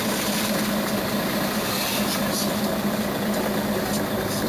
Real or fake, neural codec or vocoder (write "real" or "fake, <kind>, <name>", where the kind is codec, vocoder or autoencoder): real